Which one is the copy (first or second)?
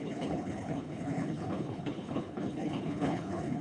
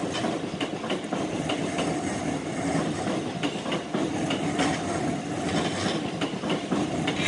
first